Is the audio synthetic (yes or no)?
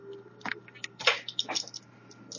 no